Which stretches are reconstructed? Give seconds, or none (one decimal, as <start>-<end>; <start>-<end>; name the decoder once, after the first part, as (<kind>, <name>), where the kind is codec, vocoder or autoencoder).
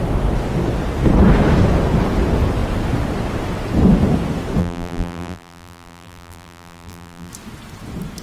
4.6-7.3 (vocoder, BigVGAN v2)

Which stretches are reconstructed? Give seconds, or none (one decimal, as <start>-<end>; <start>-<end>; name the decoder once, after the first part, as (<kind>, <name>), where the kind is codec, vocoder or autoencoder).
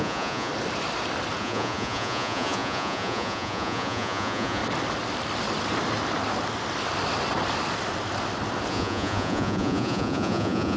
0.0-0.5 (vocoder, Vocos); 1.4-4.6; 8.7-10.8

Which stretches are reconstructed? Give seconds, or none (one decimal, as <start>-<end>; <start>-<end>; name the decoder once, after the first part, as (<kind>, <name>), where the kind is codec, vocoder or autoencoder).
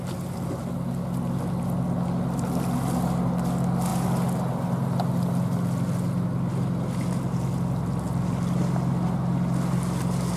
none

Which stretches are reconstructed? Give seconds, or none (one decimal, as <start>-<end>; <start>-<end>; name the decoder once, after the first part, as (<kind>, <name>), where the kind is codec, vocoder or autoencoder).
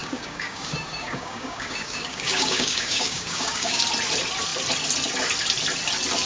0.0-3.8 (codec, DAC)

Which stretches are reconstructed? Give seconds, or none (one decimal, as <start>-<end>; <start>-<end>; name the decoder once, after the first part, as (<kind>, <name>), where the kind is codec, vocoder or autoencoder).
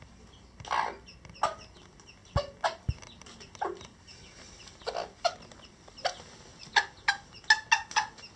none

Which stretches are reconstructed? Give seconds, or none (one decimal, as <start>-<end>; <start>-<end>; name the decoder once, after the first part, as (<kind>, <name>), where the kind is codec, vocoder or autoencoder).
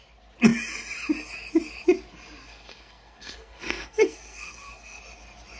2.4-5.0 (codec, SNAC)